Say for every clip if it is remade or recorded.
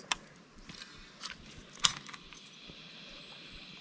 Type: recorded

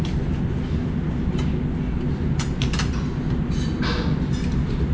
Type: recorded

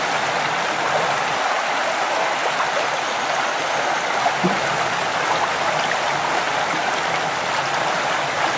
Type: recorded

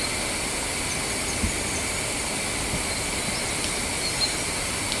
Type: recorded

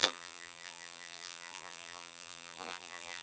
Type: remade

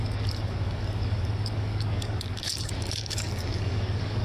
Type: remade